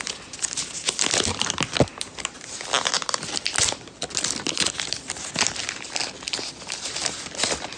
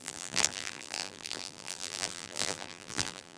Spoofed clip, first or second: second